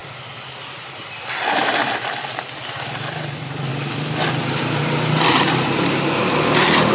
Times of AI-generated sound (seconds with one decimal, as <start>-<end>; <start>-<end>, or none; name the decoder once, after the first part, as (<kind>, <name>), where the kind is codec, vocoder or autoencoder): none